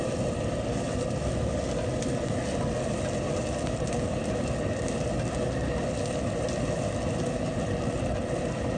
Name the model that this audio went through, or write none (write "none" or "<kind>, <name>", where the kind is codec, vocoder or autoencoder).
none